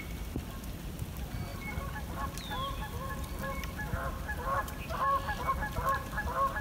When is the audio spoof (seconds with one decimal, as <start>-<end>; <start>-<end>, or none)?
none